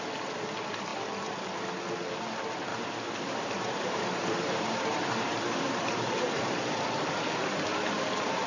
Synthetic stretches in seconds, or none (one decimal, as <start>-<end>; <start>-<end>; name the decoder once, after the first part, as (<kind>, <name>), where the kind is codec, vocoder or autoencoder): 2.7-6.8 (vocoder, BigVGAN v2)